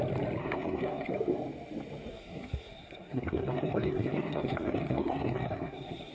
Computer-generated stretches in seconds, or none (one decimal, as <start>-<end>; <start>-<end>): 0.4-1.1; 2.1-6.1